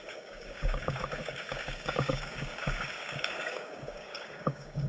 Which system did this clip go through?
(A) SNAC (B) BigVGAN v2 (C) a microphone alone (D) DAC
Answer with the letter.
D